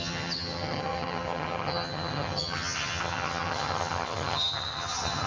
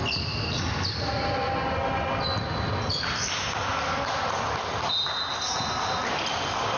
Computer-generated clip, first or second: first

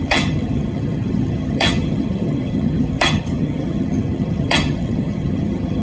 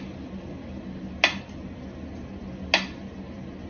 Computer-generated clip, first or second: first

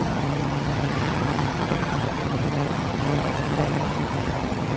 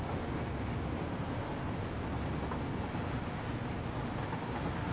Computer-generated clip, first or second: first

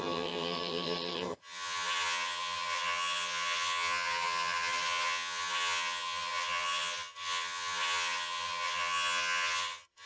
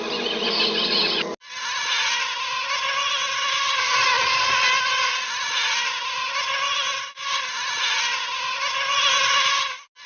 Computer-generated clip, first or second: first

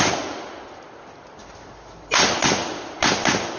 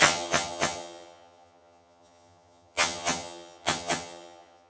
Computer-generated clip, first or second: second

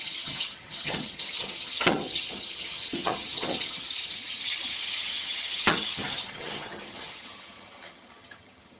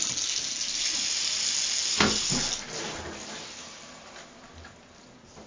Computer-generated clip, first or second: first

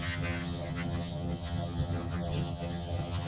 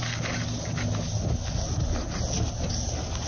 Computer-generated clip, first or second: first